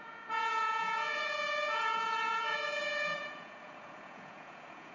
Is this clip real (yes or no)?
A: no